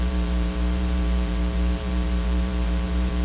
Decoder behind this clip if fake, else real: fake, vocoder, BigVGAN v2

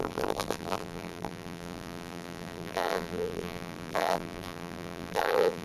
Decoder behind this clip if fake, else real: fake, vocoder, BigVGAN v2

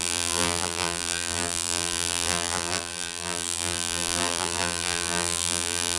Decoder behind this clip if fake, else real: fake, vocoder, BigVGAN v2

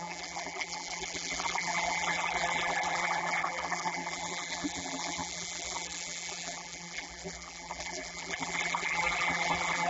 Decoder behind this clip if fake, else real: fake, vocoder, BigVGAN v2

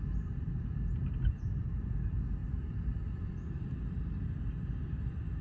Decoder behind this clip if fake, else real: fake, vocoder, BigVGAN v2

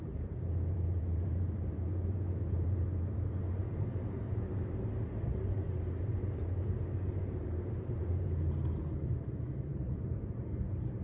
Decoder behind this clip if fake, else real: fake, vocoder, BigVGAN v2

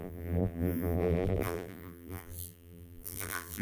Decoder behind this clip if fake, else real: fake, vocoder, BigVGAN v2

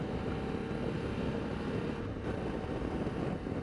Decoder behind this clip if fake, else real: real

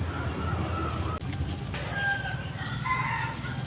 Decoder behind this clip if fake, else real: real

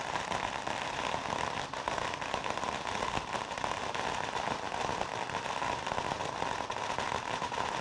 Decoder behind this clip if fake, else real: fake, vocoder, BigVGAN v2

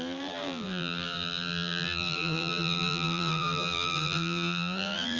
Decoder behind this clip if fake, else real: fake, vocoder, BigVGAN v2